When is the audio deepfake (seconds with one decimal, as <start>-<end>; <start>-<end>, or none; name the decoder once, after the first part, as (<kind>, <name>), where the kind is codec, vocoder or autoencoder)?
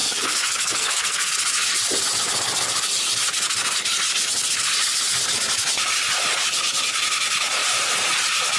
0.0-1.3 (codec, SNAC)